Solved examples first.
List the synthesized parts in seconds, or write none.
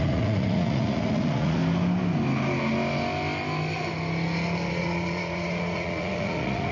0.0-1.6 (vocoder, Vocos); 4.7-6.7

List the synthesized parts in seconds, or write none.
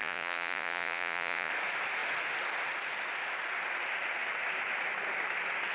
0.0-1.5 (vocoder, Vocos)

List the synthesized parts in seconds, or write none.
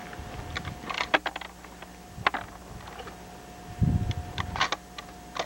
none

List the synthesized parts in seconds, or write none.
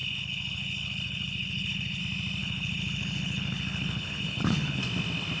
0.0-2.0 (codec, HILCodec); 2.4-4.8